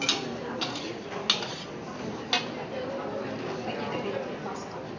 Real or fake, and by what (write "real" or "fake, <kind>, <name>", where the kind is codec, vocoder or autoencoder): real